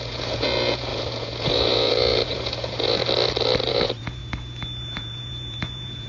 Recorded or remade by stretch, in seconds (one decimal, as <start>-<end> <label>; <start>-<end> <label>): 0.0-3.0 remade; 3.0-3.7 recorded; 3.7-4.2 remade; 4.2-5.0 recorded; 5.0-6.1 remade